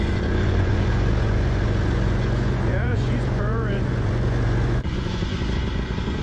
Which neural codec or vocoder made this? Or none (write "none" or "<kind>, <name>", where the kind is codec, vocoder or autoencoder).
vocoder, Vocos